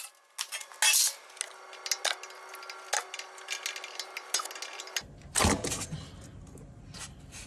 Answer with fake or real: real